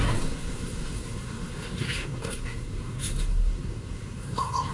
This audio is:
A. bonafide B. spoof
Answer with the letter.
B